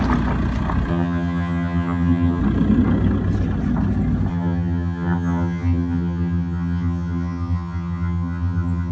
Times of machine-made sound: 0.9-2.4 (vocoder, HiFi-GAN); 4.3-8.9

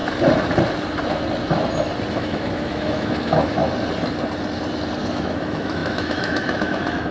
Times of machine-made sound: 2.1-3.6 (autoencoder, DAC-VAE); 5.1-7.1

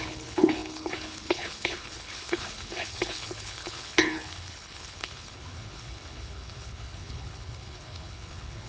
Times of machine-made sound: 0.0-8.7 (codec, HILCodec)

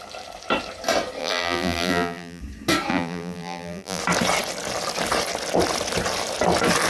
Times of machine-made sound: 1.2-2.4 (vocoder, BigVGAN v2); 2.9-4.0

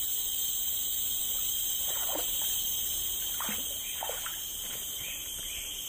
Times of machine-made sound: 1.2-3.1 (vocoder, BigVGAN v2)

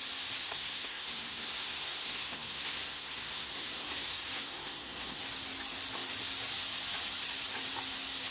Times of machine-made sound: 0.4-5.2 (codec, SNAC)

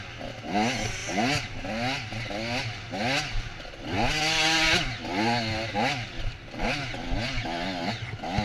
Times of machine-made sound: none